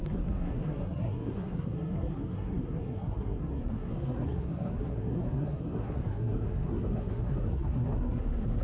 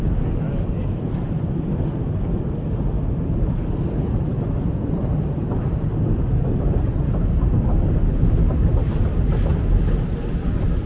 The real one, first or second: second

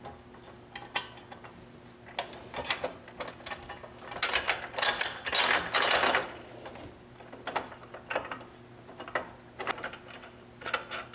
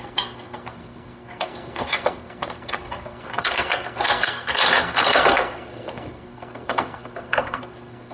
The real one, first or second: first